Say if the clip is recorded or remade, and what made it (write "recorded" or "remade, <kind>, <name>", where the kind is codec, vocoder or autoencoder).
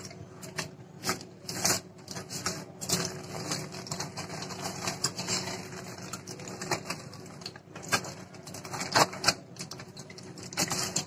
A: recorded